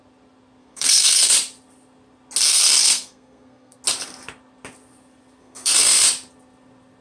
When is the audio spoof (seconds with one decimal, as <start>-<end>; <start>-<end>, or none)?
0.6-1.3; 2.5-3.8; 5.4-6.0